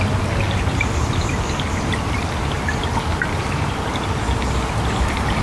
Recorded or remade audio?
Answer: recorded